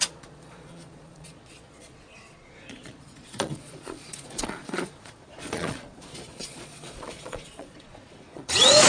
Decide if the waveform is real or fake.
fake